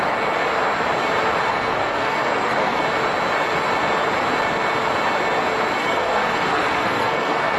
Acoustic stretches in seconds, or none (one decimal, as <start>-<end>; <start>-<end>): 0.0-1.5; 2.8-5.8